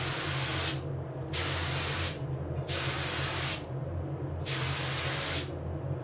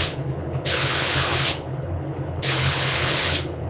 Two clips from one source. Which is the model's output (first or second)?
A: second